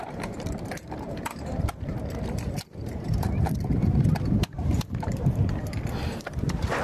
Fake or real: fake